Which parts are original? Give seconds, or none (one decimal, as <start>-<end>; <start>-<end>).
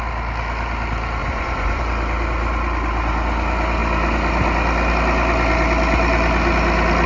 0.0-1.2; 1.8-7.1